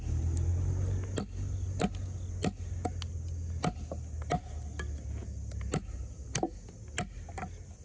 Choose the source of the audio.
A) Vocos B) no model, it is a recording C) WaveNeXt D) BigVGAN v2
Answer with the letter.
B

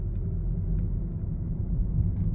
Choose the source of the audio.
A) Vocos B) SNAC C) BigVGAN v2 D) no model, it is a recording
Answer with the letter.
D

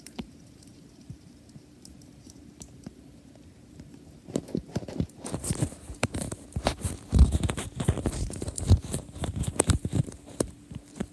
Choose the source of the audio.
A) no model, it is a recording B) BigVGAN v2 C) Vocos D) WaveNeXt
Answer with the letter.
B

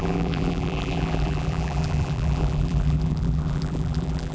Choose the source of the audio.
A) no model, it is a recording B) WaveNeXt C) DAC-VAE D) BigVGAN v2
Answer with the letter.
D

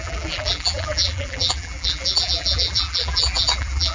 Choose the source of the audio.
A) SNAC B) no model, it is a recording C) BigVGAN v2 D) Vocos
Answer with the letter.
C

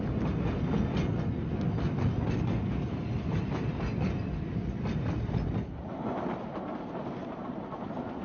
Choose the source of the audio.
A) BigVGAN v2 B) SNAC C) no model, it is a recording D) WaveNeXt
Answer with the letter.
C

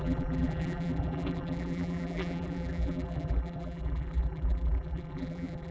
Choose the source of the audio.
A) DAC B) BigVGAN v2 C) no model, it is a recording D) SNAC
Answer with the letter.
B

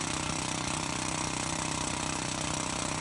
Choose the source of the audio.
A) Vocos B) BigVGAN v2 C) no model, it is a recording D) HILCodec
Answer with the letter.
B